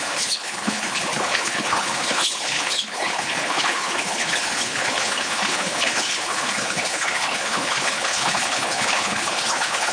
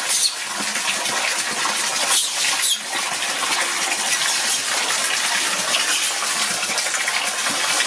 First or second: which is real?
second